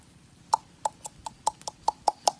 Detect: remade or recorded recorded